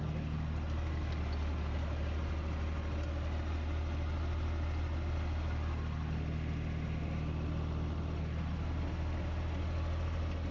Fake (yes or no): no